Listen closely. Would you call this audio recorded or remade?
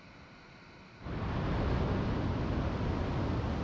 recorded